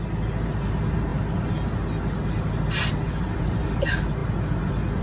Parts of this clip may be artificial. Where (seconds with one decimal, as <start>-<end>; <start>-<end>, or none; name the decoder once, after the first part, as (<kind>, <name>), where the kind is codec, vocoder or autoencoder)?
none

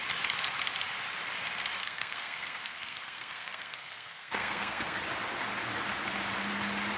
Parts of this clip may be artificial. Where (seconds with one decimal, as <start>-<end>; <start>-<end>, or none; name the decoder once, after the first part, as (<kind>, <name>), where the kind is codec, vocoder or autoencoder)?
1.8-5.0 (codec, SNAC)